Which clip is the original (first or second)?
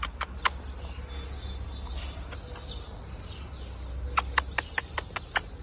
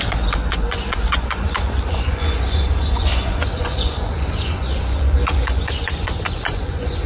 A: first